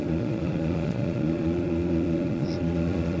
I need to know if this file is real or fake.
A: fake